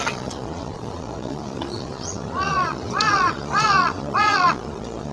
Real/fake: fake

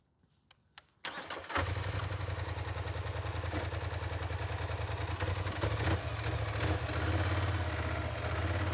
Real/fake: real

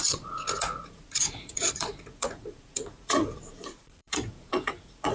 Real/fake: fake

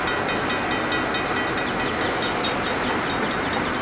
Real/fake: real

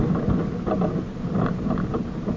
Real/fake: real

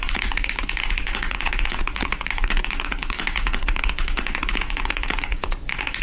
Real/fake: fake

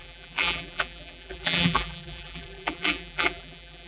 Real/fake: fake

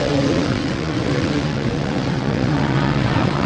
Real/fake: fake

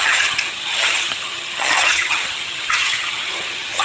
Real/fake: fake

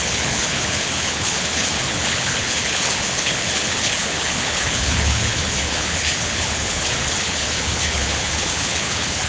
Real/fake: fake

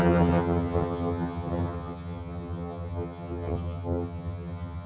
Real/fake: fake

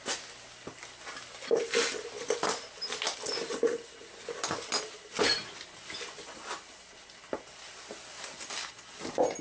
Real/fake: real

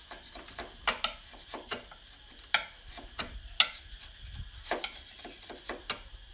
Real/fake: real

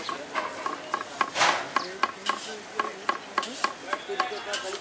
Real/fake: real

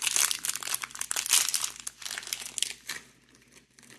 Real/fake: real